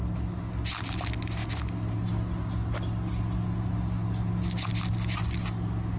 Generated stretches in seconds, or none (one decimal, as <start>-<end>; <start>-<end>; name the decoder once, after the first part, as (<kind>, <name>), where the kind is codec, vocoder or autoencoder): none